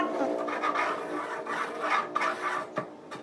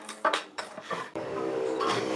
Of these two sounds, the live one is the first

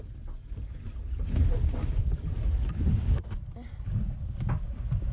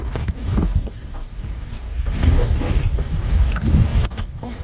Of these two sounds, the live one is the first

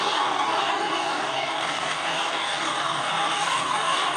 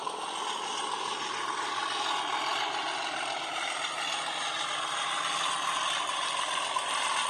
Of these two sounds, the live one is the second